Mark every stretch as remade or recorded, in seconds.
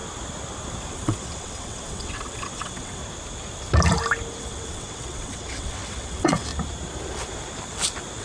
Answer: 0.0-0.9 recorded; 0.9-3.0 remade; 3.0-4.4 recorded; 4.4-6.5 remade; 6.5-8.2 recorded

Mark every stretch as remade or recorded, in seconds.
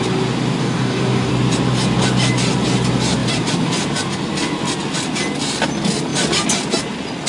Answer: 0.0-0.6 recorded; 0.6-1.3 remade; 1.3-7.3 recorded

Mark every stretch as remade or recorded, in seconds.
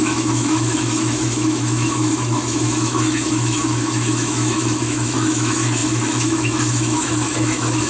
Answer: 0.0-7.9 remade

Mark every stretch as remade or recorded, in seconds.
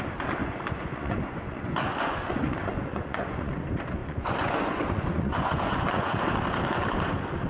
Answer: 0.0-0.4 recorded; 0.4-3.5 remade; 3.5-4.0 recorded; 4.0-6.3 remade; 6.3-7.5 recorded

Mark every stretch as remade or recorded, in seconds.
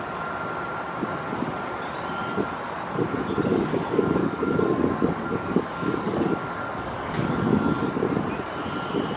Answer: 0.0-3.5 recorded; 3.5-7.7 remade; 7.7-9.2 recorded